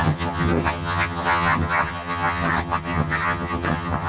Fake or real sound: fake